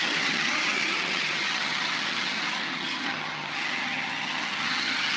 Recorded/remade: remade